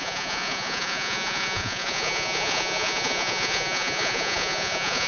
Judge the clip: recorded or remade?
remade